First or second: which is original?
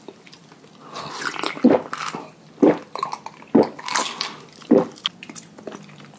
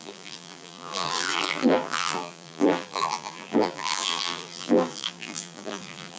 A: first